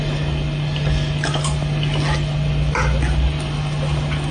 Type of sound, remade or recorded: recorded